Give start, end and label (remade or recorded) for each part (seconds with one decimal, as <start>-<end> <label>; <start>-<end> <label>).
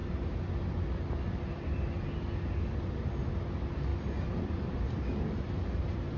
0.0-3.9 recorded; 3.9-6.2 remade